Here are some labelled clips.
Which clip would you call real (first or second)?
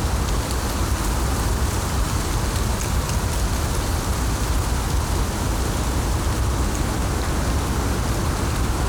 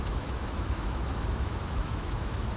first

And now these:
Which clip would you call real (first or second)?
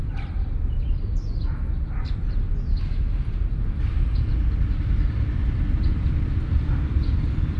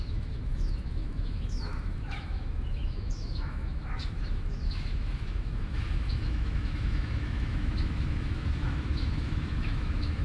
first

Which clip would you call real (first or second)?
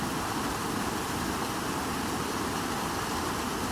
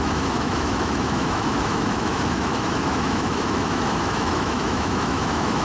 first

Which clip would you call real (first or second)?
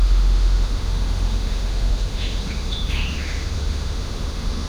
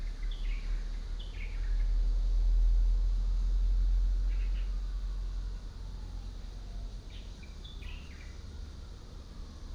second